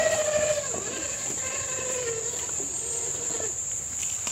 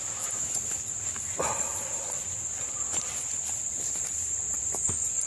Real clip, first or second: first